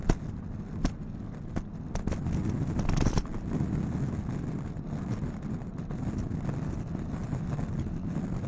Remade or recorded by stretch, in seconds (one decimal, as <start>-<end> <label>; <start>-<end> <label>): 0.0-8.5 recorded